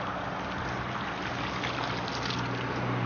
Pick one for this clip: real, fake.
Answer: real